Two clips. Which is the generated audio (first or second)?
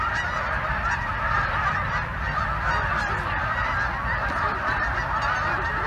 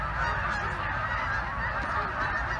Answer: first